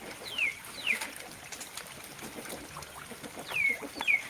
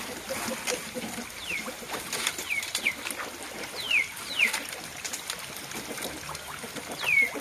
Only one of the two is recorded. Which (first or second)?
second